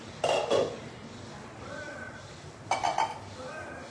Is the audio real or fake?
real